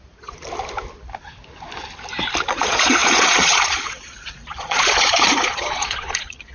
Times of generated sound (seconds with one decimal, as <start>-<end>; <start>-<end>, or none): 0.0-0.4; 2.5-6.5

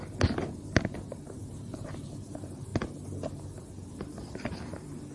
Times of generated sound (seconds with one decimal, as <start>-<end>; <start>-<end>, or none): 0.0-2.7; 3.6-5.1

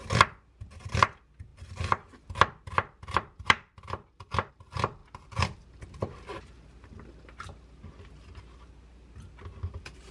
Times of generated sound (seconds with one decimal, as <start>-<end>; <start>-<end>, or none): 0.0-5.0; 6.0-10.1

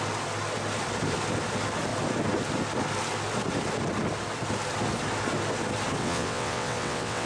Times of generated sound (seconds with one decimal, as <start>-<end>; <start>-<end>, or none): 6.0-7.3

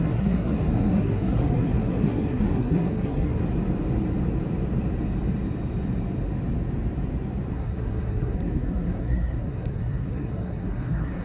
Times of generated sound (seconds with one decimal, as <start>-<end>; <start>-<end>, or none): 0.0-3.4; 7.5-11.2